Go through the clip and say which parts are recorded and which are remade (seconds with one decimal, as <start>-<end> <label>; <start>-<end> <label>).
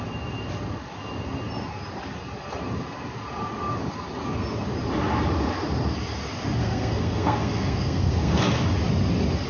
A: 0.0-6.6 recorded; 6.6-8.4 remade; 8.4-9.5 recorded